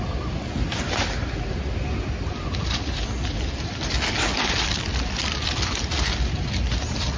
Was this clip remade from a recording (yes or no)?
no